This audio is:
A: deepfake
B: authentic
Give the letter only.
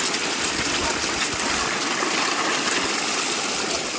B